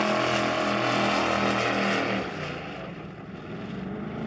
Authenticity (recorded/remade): recorded